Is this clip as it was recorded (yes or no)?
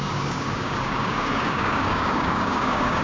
no